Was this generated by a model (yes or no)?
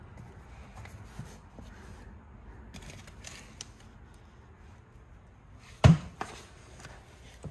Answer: no